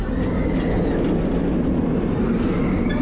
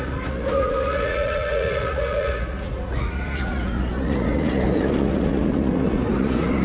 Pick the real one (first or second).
first